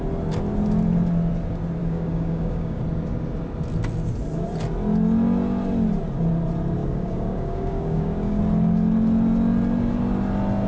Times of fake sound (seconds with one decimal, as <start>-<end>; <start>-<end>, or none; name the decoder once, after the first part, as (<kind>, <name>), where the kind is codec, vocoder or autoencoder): 1.8-2.8 (codec, DAC); 6.8-8.4